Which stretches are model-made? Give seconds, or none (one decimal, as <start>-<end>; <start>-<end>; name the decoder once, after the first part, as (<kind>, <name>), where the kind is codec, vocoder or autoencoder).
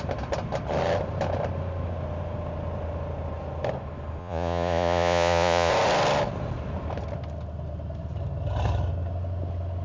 4.2-5.7 (vocoder, Vocos)